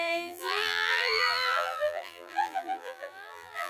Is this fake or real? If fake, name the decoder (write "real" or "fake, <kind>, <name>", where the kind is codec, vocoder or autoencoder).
fake, vocoder, BigVGAN v2